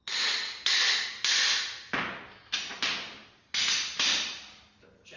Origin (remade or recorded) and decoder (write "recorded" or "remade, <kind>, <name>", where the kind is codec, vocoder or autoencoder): recorded